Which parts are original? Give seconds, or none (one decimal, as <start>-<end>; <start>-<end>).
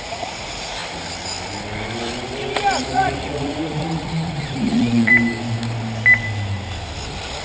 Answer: 0.8-2.8; 5.1-7.4